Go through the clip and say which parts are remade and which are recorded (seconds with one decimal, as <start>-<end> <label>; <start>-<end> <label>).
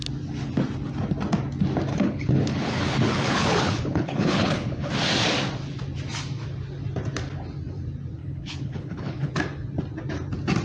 0.0-1.9 recorded; 1.9-4.9 remade; 4.9-8.2 recorded; 8.2-9.3 remade; 9.3-10.6 recorded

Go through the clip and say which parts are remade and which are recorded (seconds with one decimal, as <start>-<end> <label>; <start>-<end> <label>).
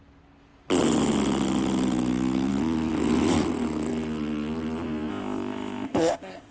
0.0-5.1 recorded; 5.1-6.5 remade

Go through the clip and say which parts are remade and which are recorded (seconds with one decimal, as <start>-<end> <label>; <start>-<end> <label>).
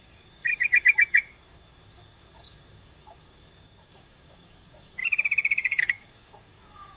0.0-5.0 remade; 5.0-5.8 recorded; 5.8-7.0 remade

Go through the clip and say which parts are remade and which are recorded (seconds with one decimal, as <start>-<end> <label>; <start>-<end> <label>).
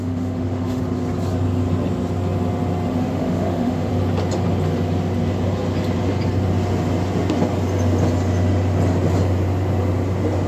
0.0-0.8 remade; 0.8-2.9 recorded; 2.9-3.9 remade; 3.9-10.5 recorded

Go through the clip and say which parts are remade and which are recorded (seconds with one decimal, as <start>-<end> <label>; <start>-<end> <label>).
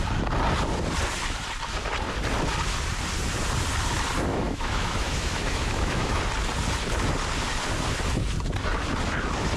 0.0-4.3 recorded; 4.3-6.2 remade; 6.2-9.6 recorded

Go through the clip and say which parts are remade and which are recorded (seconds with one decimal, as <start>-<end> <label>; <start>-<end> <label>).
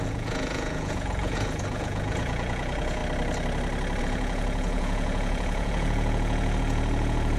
0.0-3.0 remade; 3.0-4.0 recorded; 4.0-7.4 remade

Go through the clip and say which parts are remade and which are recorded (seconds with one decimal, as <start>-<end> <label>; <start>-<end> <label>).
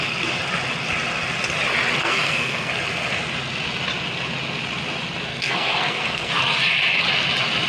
0.0-2.0 recorded; 2.0-2.7 remade; 2.7-5.3 recorded; 5.3-6.3 remade; 6.3-7.7 recorded